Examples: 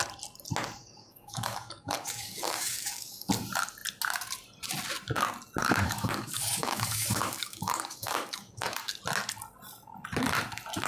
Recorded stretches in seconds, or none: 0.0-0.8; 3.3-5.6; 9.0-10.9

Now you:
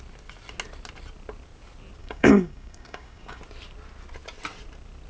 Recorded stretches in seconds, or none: 0.0-2.0; 3.4-5.1

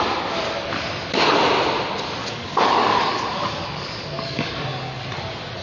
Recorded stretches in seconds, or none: 0.0-2.2; 5.1-5.6

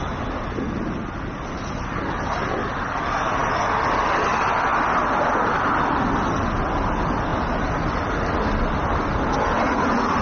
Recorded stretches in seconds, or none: 0.0-10.2

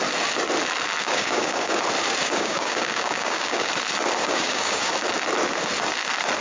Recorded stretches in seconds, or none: 0.0-1.0; 1.8-2.2; 3.7-4.2; 4.9-6.4